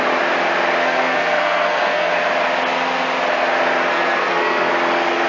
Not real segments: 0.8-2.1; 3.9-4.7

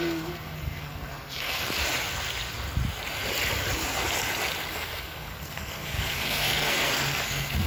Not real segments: 0.0-1.6; 4.7-7.7